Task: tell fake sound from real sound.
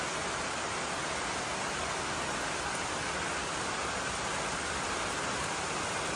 real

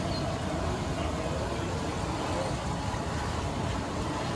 fake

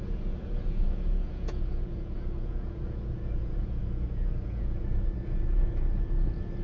fake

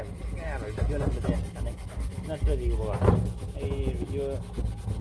real